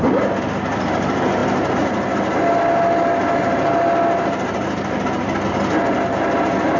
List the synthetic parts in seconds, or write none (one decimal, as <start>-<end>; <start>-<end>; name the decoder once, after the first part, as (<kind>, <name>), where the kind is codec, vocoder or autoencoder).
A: none